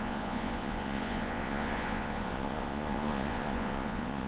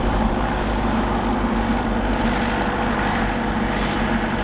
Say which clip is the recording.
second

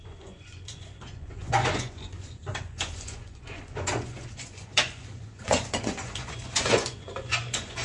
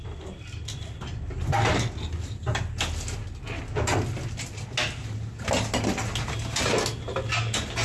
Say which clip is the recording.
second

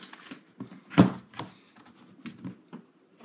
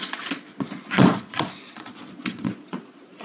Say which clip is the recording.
first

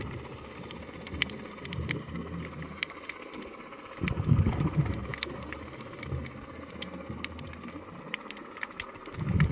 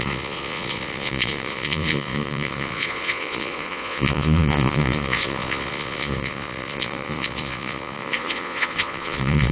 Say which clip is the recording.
first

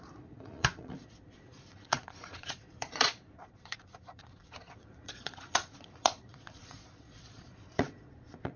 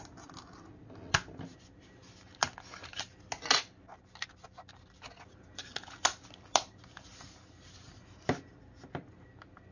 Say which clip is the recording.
second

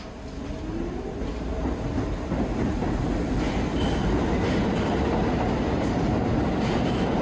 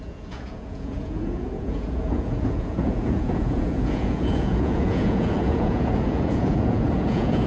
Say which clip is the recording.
first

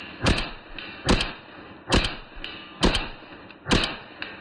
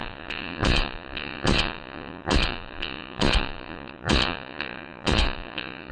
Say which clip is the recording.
first